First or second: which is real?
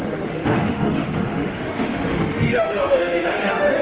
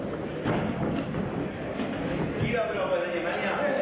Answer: second